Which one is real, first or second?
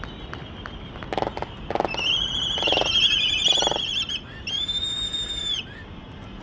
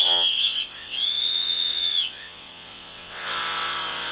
first